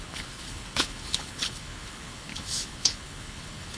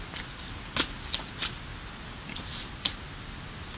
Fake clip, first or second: first